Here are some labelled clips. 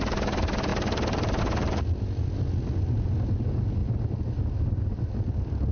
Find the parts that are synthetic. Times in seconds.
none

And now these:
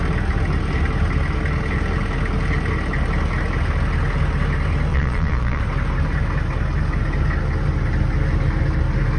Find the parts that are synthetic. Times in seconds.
4.9-5.6 (vocoder, Vocos)